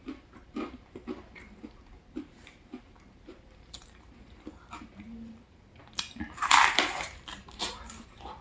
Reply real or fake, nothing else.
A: fake